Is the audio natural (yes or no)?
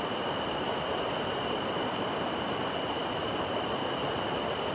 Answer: no